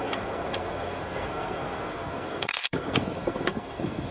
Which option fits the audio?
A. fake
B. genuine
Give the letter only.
A